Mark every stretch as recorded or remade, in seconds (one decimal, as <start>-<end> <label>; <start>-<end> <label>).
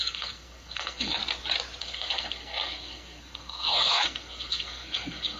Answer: 0.0-1.2 remade; 1.2-1.8 recorded; 1.8-5.4 remade